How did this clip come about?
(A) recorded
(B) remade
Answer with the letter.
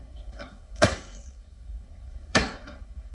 B